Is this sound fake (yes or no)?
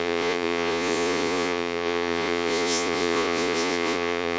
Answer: yes